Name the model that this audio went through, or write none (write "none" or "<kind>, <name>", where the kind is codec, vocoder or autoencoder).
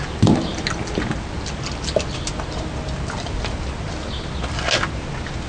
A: none